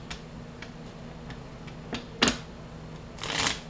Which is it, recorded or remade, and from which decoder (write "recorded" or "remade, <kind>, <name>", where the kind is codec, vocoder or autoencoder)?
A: recorded